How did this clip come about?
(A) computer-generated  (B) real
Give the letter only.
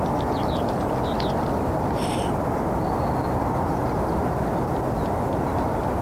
B